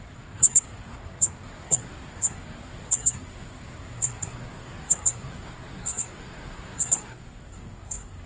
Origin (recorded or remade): remade